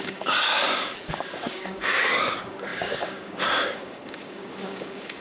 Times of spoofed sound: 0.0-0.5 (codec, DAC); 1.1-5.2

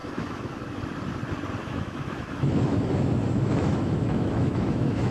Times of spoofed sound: 0.0-0.6 (autoencoder, DAC-VAE); 1.6-5.1